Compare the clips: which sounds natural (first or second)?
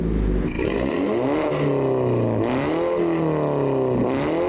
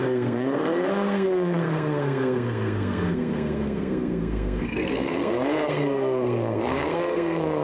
first